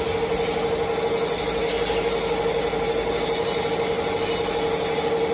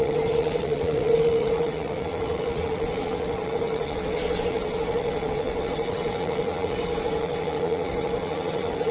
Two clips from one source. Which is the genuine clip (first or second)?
first